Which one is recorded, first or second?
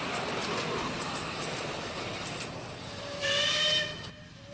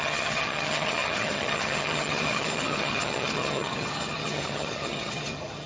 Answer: first